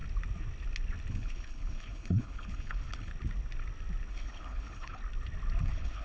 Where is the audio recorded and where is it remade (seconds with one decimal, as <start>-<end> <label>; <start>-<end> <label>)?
0.0-1.1 recorded; 1.1-3.1 remade; 3.1-4.1 recorded; 4.1-5.0 remade; 5.0-5.6 recorded; 5.6-6.0 remade